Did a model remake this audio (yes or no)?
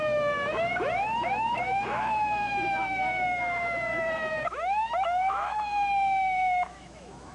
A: yes